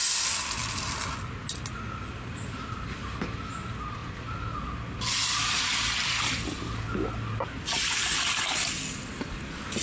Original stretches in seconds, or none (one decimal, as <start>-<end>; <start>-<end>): 0.0-9.8